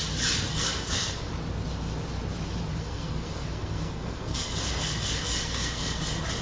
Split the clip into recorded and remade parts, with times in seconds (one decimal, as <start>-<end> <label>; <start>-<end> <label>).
0.0-0.5 recorded; 0.5-1.3 remade; 1.3-2.7 recorded; 2.7-6.0 remade; 6.0-6.4 recorded